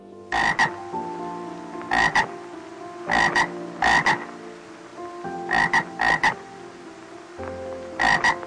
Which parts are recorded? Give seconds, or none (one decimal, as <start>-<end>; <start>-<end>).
0.0-8.5